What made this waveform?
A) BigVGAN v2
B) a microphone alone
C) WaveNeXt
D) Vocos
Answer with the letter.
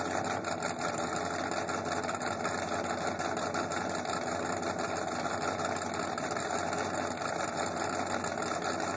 B